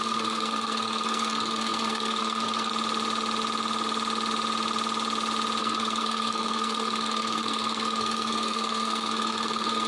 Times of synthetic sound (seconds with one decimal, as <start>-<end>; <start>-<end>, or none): 0.0-2.7; 5.6-9.9